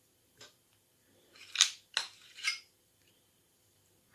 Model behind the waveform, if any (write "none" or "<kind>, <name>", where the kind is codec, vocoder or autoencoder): vocoder, BigVGAN v2